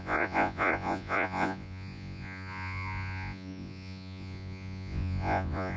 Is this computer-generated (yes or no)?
yes